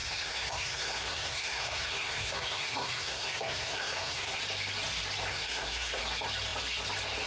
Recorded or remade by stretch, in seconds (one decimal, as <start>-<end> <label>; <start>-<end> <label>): 0.0-4.4 remade; 4.4-5.3 recorded; 5.3-6.0 remade; 6.0-7.3 recorded